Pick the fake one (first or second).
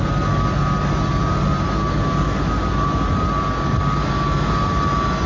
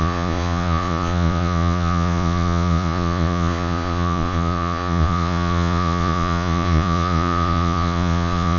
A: second